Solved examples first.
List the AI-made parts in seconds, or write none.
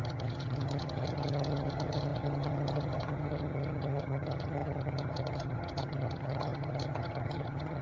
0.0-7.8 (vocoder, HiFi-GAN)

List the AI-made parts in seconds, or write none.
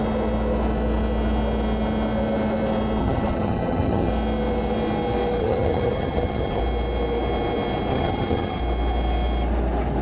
3.0-4.1 (vocoder, HiFi-GAN); 5.4-6.6; 7.9-8.6